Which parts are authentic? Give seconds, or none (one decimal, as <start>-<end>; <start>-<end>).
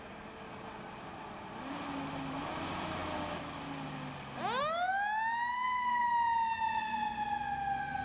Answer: 0.0-8.0